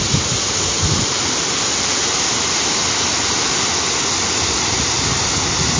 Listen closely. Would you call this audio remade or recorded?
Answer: recorded